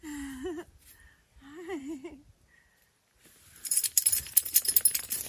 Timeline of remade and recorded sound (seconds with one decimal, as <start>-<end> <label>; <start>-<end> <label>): 0.0-5.3 recorded